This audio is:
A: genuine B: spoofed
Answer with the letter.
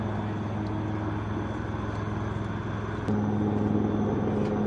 A